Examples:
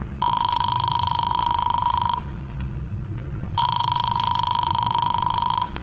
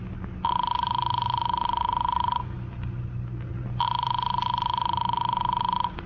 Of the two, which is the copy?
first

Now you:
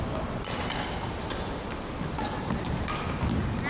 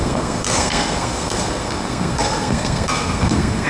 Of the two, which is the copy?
second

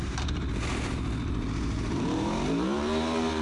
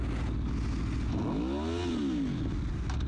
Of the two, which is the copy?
first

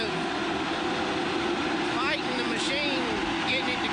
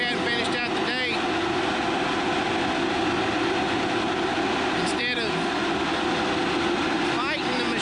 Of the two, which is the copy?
first